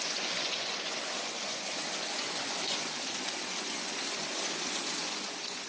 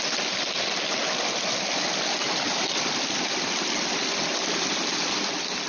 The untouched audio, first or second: second